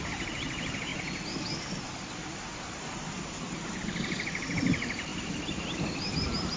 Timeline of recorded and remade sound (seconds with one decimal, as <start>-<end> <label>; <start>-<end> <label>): 0.0-0.9 remade; 0.9-3.8 recorded; 3.8-6.6 remade